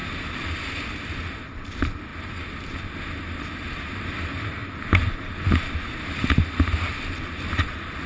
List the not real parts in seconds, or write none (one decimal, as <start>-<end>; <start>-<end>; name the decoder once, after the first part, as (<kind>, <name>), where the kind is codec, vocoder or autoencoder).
none